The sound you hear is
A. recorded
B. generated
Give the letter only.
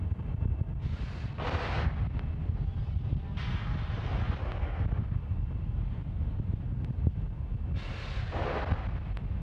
A